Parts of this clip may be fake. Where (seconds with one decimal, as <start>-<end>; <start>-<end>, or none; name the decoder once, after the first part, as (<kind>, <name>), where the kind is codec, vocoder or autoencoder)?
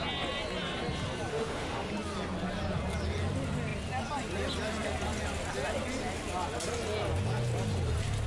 1.3-1.9 (autoencoder, DAC-VAE)